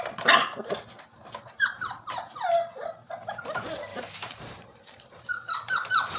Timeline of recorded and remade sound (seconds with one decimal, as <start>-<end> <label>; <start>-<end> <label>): 0.0-3.9 recorded; 3.9-5.3 remade; 5.3-6.2 recorded